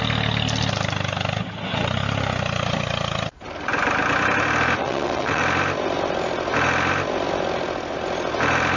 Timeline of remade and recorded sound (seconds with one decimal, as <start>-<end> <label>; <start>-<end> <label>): 0.0-4.8 recorded; 4.8-5.4 remade; 5.4-8.8 recorded